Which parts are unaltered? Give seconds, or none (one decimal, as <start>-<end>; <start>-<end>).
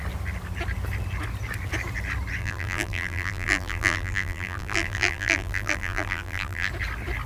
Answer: 0.0-2.4; 6.7-7.3